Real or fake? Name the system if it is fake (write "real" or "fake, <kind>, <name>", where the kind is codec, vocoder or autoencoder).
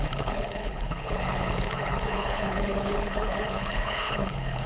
fake, codec, HILCodec